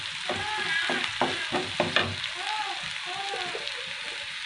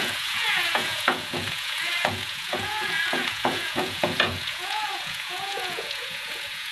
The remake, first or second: second